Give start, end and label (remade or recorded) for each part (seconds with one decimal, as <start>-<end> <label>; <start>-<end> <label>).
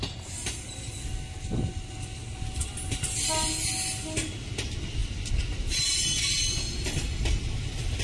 0.0-8.0 recorded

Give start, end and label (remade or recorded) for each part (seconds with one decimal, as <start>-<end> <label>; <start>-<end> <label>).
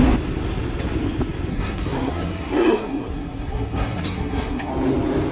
0.0-1.5 recorded; 1.5-4.7 remade; 4.7-5.3 recorded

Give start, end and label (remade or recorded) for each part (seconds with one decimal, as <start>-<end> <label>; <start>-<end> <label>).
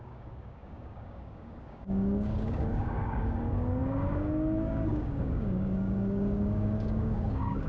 0.0-7.7 remade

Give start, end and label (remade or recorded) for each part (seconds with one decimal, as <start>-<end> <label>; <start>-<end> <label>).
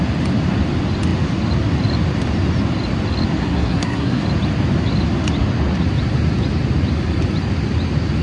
0.0-3.4 recorded; 3.4-4.2 remade; 4.2-8.2 recorded